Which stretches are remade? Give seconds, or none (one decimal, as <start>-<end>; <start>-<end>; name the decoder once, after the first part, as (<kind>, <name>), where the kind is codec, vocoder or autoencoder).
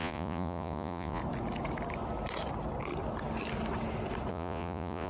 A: 0.0-1.2 (vocoder, Vocos); 4.3-5.1